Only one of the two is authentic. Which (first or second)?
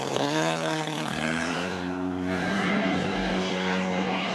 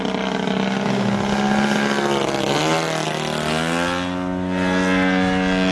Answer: second